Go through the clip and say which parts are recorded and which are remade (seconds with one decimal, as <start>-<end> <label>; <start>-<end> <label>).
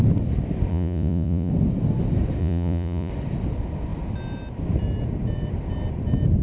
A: 0.0-0.7 recorded; 0.7-1.5 remade; 1.5-2.4 recorded; 2.4-3.1 remade; 3.1-6.4 recorded